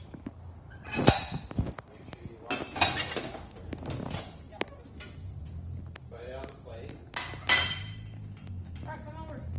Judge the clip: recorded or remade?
recorded